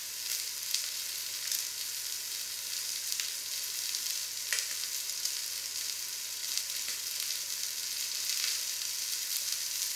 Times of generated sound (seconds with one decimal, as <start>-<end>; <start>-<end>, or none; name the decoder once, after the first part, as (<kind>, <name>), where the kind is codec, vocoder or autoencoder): none